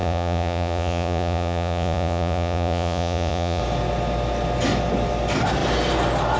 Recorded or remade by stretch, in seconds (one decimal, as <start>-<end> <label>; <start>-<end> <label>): 0.0-3.6 remade; 3.6-6.4 recorded